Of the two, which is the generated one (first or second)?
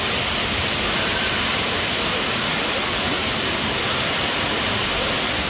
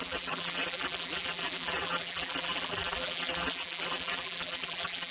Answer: second